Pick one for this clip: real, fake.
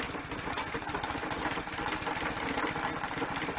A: real